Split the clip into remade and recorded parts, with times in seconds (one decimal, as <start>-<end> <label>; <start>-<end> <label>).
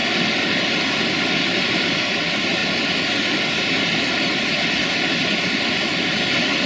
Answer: 0.0-6.7 recorded